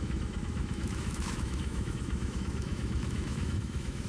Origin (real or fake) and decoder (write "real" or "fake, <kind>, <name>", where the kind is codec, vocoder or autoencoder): fake, autoencoder, DAC-VAE